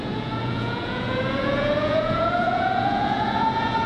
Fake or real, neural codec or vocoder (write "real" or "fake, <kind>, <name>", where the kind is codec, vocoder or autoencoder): fake, vocoder, Vocos